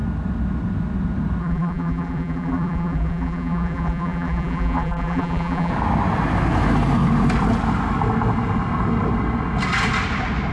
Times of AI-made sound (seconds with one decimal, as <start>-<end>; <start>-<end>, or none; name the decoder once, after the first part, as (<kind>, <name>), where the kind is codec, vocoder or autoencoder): 1.4-5.7 (vocoder, BigVGAN v2)